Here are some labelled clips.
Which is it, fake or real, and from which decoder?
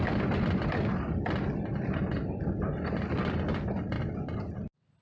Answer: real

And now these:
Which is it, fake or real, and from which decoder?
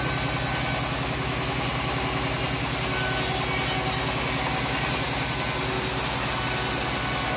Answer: real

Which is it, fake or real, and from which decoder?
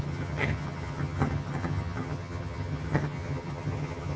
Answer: fake, vocoder, HiFi-GAN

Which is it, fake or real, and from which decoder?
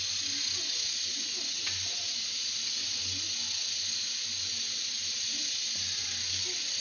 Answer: real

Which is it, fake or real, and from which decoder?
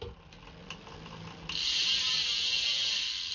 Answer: real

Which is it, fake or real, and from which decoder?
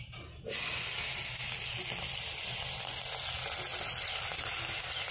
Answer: real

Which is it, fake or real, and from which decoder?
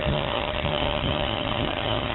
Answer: fake, vocoder, HiFi-GAN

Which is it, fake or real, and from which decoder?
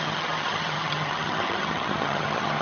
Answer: fake, vocoder, HiFi-GAN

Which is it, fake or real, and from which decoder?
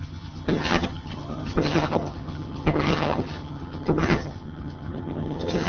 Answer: fake, vocoder, HiFi-GAN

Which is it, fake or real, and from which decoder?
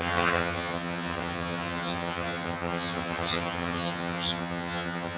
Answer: fake, vocoder, HiFi-GAN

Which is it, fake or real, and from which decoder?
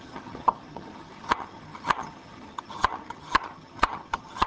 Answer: fake, vocoder, HiFi-GAN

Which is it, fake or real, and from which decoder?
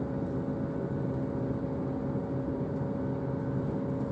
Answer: real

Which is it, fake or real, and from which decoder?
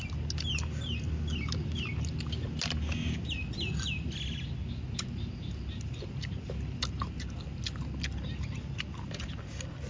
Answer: real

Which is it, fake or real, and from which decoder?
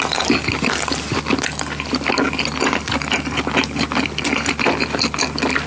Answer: real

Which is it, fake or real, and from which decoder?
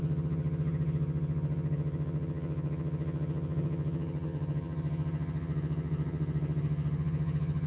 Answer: fake, vocoder, HiFi-GAN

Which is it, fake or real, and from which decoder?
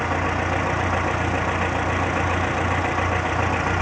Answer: real